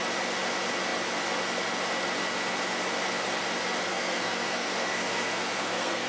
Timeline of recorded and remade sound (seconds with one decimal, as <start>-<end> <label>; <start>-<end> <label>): 0.0-3.9 recorded; 3.9-6.1 remade